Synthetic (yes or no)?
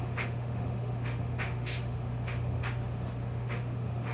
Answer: yes